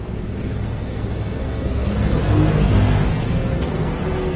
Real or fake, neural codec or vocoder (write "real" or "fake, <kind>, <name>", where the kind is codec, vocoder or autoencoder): fake, codec, SNAC